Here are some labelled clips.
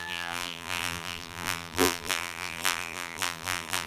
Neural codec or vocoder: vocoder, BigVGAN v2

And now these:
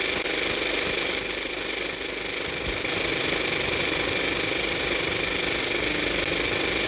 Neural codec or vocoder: none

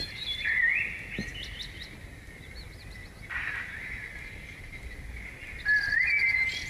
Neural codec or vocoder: none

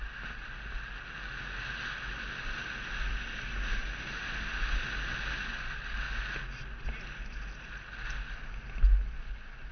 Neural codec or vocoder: none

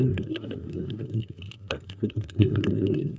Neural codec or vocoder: codec, SNAC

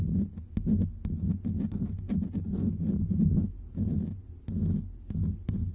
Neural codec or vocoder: none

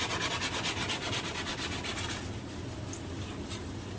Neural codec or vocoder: none